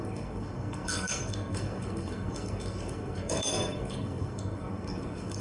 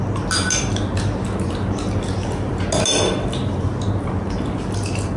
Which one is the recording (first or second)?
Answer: second